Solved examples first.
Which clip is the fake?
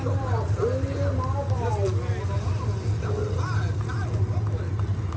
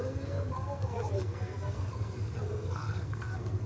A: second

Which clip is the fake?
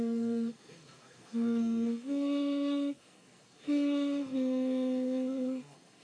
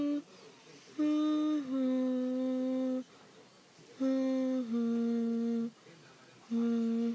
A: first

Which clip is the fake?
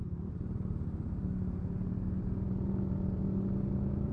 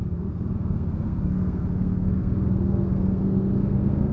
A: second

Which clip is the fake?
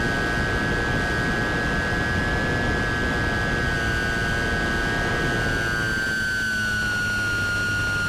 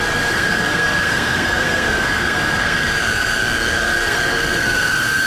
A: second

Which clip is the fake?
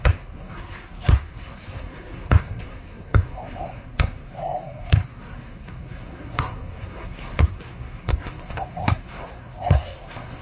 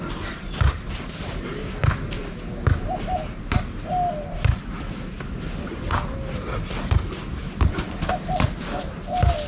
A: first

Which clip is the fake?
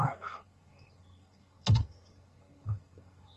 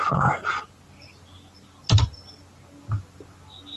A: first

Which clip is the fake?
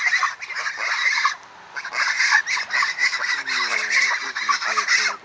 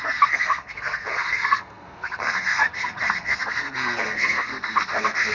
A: second